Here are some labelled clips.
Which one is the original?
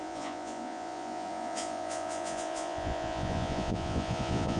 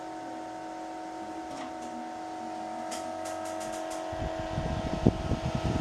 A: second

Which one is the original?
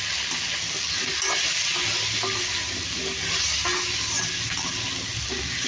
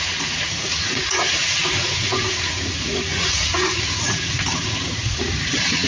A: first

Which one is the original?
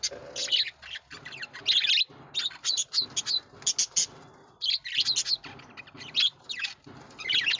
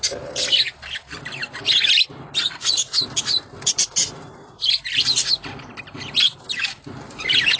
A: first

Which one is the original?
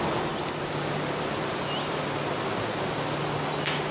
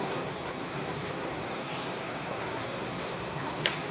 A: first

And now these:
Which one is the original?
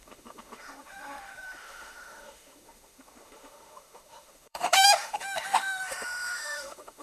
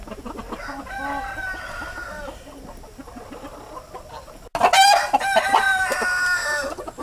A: second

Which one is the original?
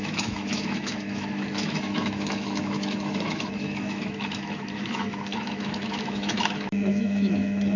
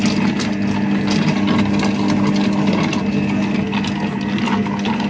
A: second